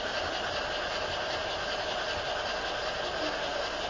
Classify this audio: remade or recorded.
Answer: recorded